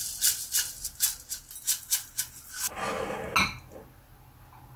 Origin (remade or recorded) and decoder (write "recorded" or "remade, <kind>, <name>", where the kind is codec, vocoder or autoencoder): recorded